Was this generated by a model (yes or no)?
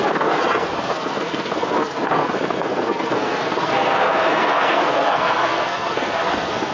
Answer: yes